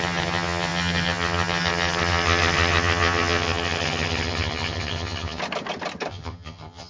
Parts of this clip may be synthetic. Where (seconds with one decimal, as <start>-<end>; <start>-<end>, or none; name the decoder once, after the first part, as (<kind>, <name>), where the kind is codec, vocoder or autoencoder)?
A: 0.0-5.4 (vocoder, HiFi-GAN); 6.1-6.9